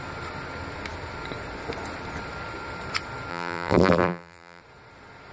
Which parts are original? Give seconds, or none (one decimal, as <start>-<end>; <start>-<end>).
0.0-3.3; 4.6-5.3